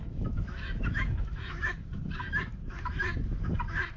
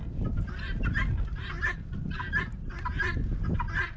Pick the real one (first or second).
second